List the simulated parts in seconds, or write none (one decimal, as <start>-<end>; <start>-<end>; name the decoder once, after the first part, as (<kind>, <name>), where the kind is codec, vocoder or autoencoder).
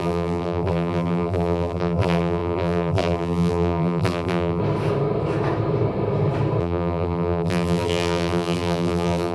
0.0-4.6 (vocoder, BigVGAN v2); 6.6-9.3